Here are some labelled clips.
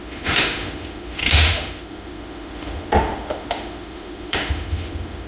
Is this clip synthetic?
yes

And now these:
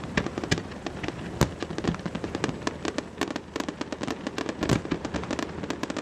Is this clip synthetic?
no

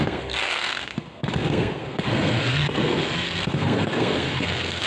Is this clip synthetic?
yes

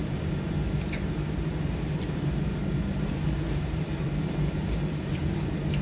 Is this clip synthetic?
yes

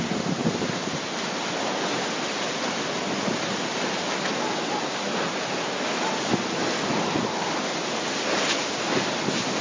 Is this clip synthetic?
no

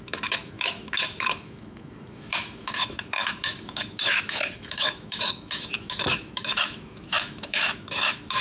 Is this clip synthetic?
yes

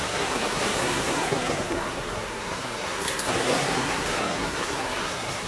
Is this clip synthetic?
yes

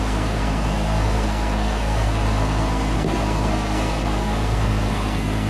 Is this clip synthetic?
yes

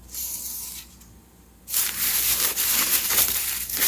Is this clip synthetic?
yes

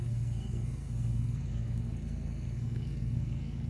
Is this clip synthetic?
yes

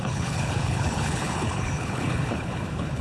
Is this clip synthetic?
yes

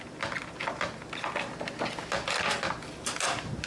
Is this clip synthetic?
no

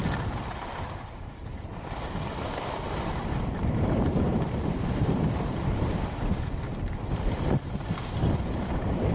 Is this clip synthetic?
yes